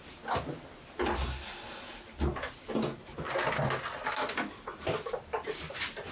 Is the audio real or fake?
real